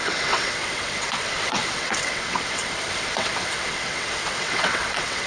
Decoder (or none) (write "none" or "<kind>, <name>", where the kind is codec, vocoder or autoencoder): vocoder, WaveNeXt